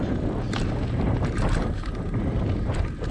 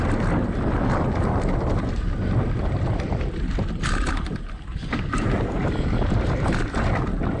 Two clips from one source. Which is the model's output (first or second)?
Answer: second